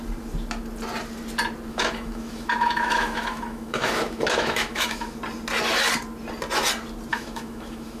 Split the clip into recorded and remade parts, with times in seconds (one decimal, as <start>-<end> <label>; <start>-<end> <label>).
0.0-1.7 recorded; 1.7-5.2 remade; 5.2-7.1 recorded; 7.1-8.0 remade